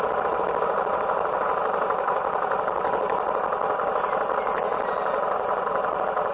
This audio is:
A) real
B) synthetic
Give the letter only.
A